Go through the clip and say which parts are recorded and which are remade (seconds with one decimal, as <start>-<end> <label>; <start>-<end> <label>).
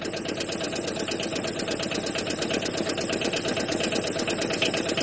0.0-5.0 recorded